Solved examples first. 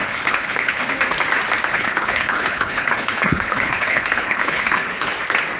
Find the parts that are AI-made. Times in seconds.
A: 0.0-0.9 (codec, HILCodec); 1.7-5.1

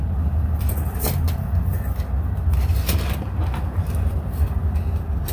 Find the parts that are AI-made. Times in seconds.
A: none

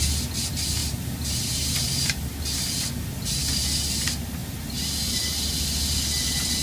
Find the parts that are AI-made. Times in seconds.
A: 0.8-2.3 (vocoder, BigVGAN v2)

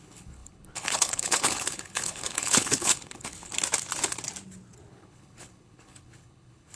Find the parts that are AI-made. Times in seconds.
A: 0.0-3.5 (codec, HILCodec); 4.9-6.8

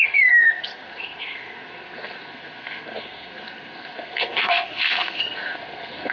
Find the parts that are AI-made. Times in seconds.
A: 0.0-6.1 (codec, SNAC)

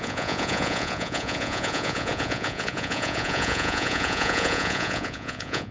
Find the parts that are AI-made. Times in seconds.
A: 0.0-5.7 (vocoder, Vocos)

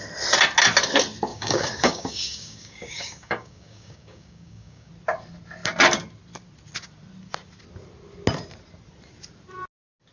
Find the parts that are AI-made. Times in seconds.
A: 1.3-4.9 (codec, DAC)

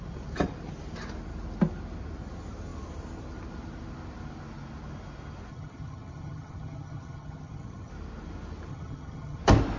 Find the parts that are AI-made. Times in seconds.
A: 5.5-7.9 (vocoder, HiFi-GAN); 8.7-9.4